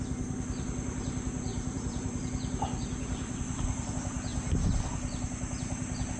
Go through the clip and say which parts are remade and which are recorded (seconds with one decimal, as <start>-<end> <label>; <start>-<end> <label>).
0.0-1.5 recorded; 1.5-3.9 remade; 3.9-6.2 recorded